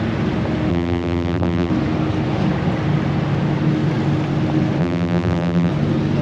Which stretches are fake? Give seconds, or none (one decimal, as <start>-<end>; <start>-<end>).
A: 0.7-1.7; 4.8-5.7